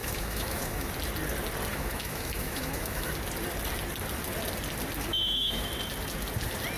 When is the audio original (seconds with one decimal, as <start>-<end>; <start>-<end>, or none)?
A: 0.9-1.7; 3.1-5.1; 5.7-6.8

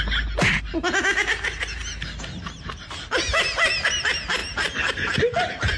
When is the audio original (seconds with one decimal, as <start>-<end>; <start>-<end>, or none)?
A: 0.0-5.8

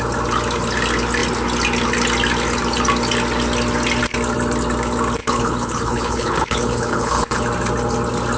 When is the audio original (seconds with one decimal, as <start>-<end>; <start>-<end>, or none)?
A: 0.0-5.2; 7.4-8.4